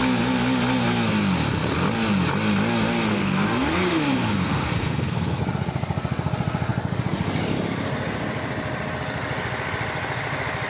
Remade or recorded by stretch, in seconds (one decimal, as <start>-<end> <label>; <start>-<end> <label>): 0.0-3.1 recorded; 3.1-5.4 remade; 5.4-10.7 recorded